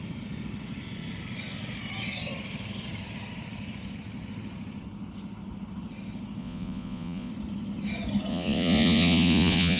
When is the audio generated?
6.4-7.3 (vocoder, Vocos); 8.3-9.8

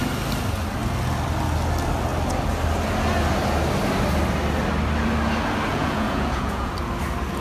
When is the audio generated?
5.7-6.7 (vocoder, Vocos)

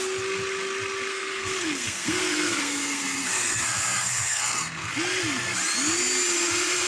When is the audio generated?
1.1-4.9 (codec, SNAC)